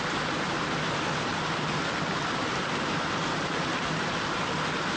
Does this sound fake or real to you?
real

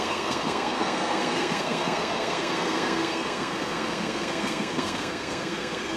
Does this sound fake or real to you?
fake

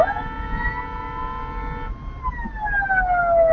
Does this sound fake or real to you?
real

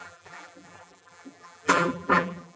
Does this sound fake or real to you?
fake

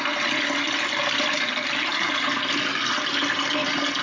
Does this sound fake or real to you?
real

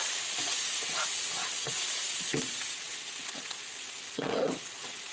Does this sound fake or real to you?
fake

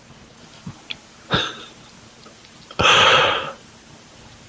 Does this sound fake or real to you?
fake